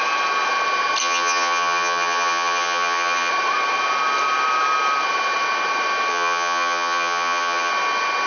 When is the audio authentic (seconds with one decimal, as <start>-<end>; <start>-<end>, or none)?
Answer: 0.0-1.0; 3.3-6.1; 7.7-8.3